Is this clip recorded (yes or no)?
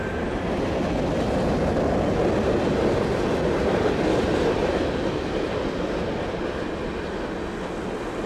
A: yes